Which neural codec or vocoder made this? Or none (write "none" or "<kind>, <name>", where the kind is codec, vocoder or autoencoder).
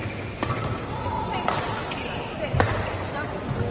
none